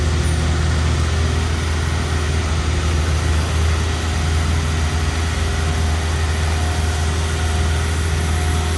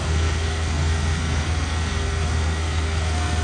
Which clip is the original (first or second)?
first